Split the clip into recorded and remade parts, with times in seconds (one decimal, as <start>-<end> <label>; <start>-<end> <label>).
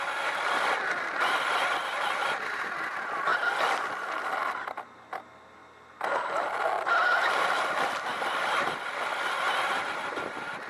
0.0-10.7 recorded